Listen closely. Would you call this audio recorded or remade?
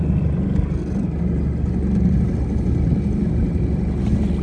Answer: recorded